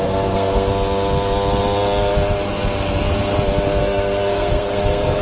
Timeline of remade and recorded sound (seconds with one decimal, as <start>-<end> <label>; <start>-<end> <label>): 0.0-0.7 remade; 0.7-3.8 recorded; 3.8-5.2 remade